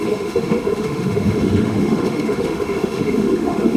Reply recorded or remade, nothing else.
remade